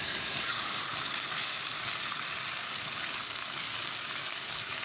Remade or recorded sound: remade